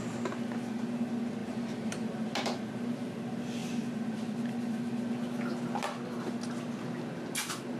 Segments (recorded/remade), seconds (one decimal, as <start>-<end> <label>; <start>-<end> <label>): 0.0-1.4 recorded; 1.4-3.2 remade; 3.2-7.8 recorded